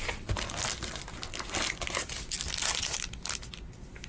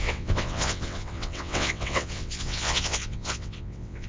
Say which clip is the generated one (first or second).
second